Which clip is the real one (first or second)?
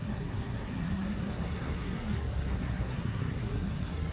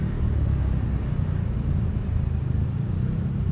second